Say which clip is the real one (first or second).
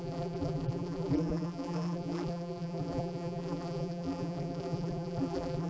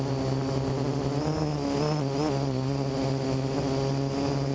second